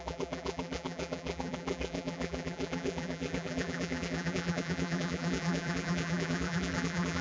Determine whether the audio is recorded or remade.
remade